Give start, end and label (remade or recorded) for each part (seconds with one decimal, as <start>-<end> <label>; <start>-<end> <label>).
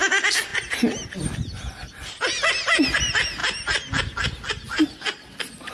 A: 0.0-5.7 recorded